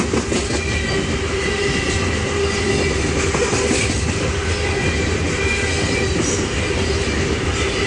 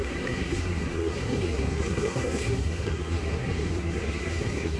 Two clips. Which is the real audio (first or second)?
first